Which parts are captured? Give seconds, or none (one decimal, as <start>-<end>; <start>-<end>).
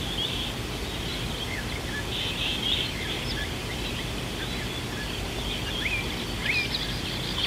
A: 0.0-7.5